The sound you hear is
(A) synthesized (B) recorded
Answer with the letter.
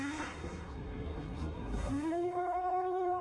A